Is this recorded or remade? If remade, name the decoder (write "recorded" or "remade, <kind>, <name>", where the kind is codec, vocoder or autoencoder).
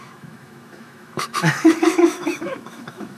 remade, autoencoder, DAC-VAE